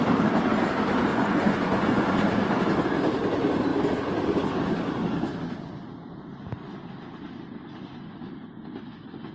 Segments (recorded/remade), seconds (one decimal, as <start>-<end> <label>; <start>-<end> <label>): 0.0-1.1 recorded; 1.1-2.1 remade; 2.1-9.3 recorded